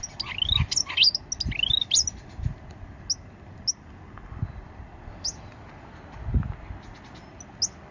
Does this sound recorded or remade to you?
recorded